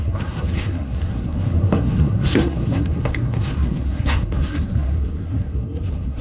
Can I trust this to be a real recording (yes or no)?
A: no